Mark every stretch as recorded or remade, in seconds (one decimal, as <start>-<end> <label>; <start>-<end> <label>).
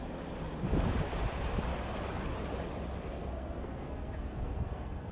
0.0-3.2 recorded; 3.2-5.1 remade